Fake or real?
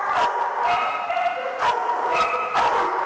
real